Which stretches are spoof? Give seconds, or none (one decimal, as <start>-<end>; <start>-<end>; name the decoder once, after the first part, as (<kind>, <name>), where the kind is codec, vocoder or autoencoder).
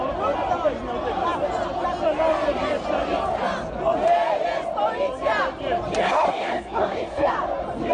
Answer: 6.0-7.3 (codec, SNAC)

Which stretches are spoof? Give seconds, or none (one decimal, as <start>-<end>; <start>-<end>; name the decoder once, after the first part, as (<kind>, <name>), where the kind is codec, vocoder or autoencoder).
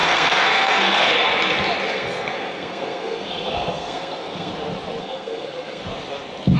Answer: 0.0-1.1 (codec, SNAC); 1.9-4.5; 5.0-5.8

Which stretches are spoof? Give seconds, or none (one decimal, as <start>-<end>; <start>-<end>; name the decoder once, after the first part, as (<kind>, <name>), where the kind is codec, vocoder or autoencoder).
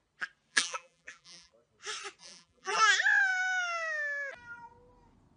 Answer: 0.5-1.5 (vocoder, BigVGAN v2); 2.2-2.8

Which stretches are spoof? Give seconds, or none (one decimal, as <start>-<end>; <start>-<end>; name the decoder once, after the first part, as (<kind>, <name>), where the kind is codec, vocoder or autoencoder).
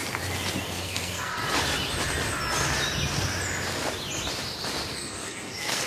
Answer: 0.6-1.4 (codec, SNAC); 4.9-5.9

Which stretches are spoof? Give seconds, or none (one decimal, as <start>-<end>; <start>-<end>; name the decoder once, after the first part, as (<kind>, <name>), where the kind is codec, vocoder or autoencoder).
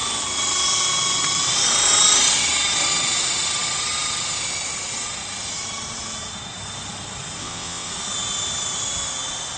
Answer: 7.4-7.9 (vocoder, WaveNeXt)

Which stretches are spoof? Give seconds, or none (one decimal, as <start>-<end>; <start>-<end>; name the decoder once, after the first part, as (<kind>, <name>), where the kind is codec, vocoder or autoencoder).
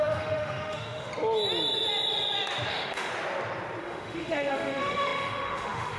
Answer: 0.0-1.1 (autoencoder, DAC-VAE); 2.7-3.1; 3.8-6.0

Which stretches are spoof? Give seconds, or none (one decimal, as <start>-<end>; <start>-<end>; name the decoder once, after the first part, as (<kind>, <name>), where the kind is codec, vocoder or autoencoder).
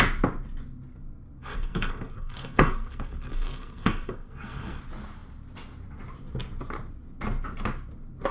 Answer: 1.4-4.8 (codec, SNAC)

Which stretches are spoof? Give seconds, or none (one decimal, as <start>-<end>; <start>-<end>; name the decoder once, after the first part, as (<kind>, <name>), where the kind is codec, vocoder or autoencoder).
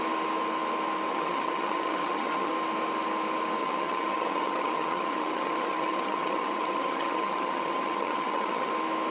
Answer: 1.1-2.5 (vocoder, HiFi-GAN); 3.6-8.7